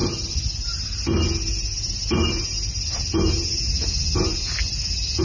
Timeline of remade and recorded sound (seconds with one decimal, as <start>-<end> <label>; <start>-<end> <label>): 0.0-5.2 recorded